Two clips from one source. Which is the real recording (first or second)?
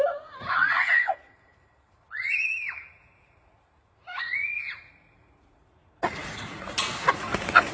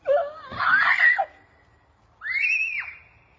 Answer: second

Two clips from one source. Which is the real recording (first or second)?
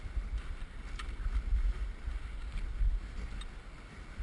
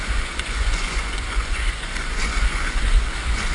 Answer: first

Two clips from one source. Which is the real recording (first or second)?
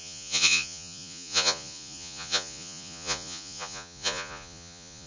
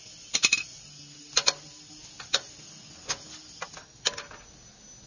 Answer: second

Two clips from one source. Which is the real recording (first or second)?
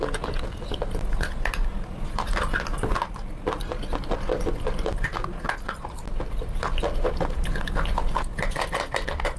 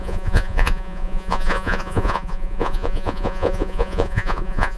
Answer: first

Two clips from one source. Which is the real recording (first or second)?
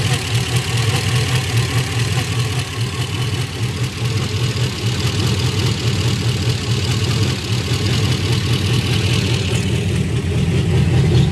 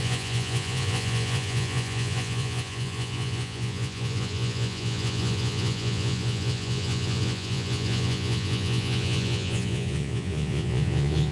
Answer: first